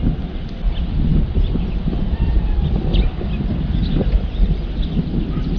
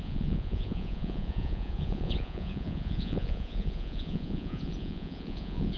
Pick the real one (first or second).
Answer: first